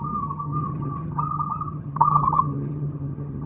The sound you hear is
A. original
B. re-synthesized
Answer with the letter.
B